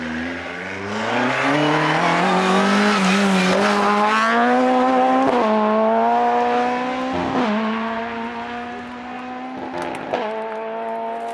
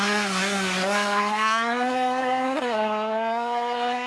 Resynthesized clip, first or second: second